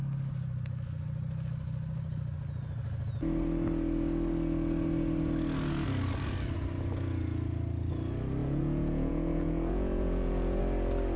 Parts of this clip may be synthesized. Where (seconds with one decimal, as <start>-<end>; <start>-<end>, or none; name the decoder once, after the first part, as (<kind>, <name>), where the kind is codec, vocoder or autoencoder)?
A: 8.4-10.6 (vocoder, Vocos)